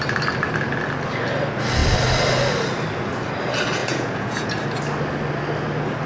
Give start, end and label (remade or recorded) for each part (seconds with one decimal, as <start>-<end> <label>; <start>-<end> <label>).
0.0-3.8 recorded; 3.8-4.6 remade; 4.6-6.1 recorded